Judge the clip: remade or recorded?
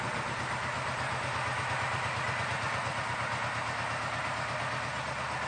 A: recorded